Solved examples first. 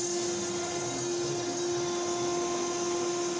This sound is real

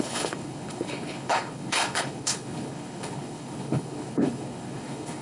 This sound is fake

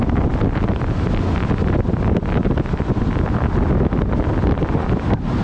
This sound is real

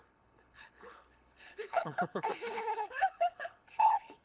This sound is fake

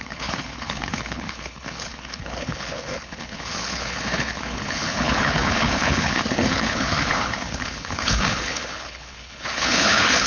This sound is fake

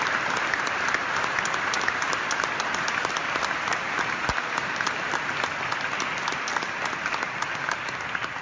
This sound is real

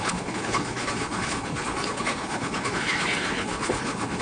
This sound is fake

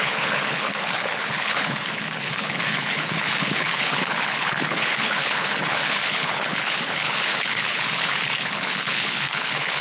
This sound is fake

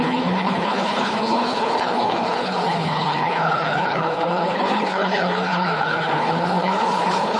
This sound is fake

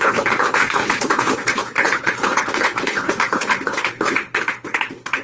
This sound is fake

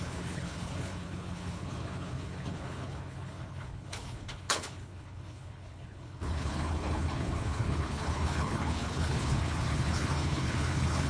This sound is fake